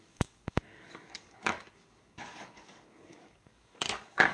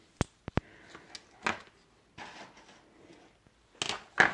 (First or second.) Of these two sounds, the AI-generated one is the first